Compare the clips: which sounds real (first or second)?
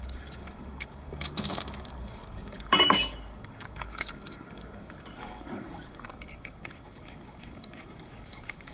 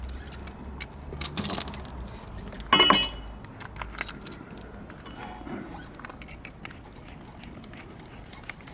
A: second